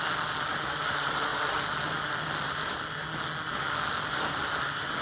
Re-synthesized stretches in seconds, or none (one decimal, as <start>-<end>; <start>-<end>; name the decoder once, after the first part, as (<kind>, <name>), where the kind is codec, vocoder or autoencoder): none